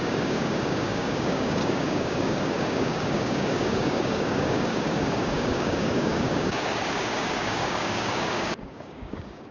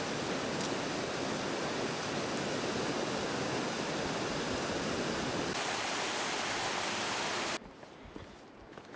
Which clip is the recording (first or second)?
second